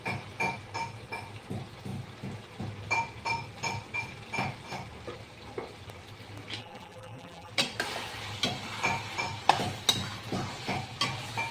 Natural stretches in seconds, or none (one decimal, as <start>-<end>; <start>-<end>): 0.0-6.6; 7.5-11.5